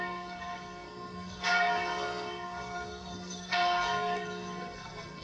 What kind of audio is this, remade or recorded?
remade